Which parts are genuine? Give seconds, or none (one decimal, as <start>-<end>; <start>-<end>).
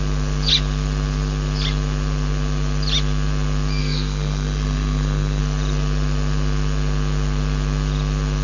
0.0-3.8; 5.4-8.4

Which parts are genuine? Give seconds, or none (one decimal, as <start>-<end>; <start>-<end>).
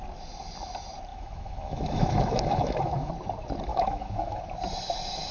0.0-1.1; 3.1-3.7; 4.4-5.3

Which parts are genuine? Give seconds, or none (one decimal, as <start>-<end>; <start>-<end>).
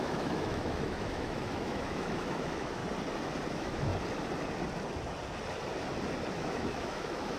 2.8-3.5; 3.9-6.3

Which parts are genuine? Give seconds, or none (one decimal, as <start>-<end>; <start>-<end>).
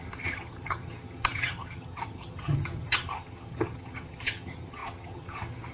none